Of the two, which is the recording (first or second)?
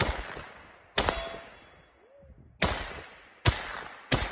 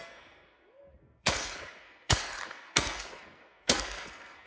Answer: first